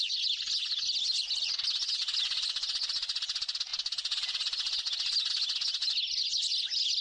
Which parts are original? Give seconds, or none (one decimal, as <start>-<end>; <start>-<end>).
0.0-7.0